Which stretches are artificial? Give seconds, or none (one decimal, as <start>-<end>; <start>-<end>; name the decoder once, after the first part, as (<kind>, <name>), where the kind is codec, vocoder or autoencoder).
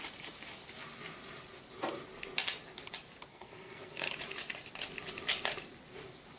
3.3-4.1 (codec, SNAC)